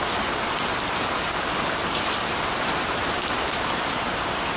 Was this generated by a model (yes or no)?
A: no